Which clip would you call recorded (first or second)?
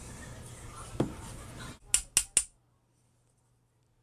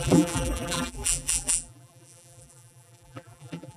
first